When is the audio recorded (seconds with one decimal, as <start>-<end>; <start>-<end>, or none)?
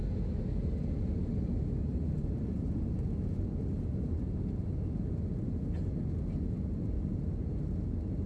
0.0-1.9; 5.6-8.3